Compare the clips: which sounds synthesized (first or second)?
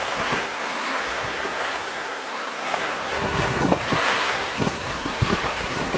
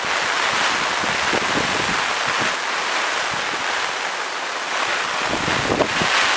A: first